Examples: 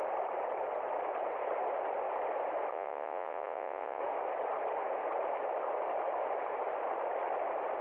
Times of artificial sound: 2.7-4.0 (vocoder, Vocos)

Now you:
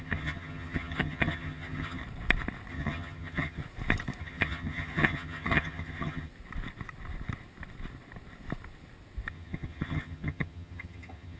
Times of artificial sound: 0.0-2.0 (vocoder, HiFi-GAN); 2.7-3.6; 4.2-6.3; 9.3-11.4

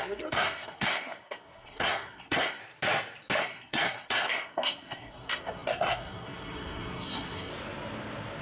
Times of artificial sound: 0.0-2.6 (codec, SNAC); 3.4-7.5

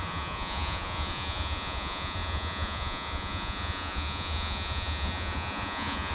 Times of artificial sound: 0.0-6.1 (vocoder, Vocos)

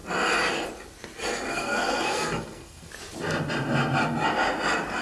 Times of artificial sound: 1.5-2.9 (codec, SNAC)